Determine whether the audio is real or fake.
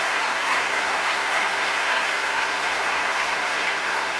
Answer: fake